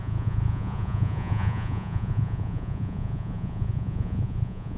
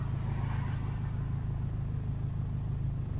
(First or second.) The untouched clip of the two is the second